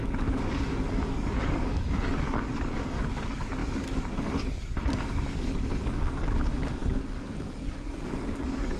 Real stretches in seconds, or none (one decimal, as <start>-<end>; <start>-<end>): none